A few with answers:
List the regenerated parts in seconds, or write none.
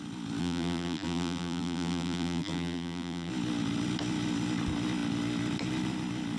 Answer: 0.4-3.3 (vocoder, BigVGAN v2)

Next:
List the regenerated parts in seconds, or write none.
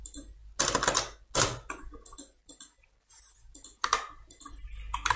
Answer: 2.4-3.1 (vocoder, BigVGAN v2)